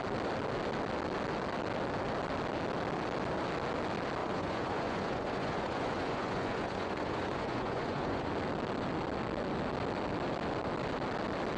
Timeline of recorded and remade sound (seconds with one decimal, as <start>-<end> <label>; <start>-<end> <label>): 0.0-4.2 recorded; 4.2-8.3 remade; 8.3-11.6 recorded